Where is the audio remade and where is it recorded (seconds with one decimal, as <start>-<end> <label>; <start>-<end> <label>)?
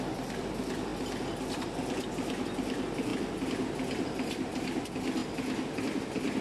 0.0-6.4 recorded